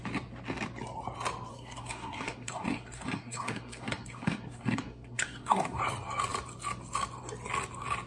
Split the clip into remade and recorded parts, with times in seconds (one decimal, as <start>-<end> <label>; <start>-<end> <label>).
0.0-1.5 recorded; 1.5-5.8 remade; 5.8-8.1 recorded